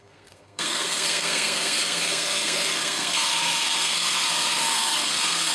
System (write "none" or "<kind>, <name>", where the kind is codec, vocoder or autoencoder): codec, SNAC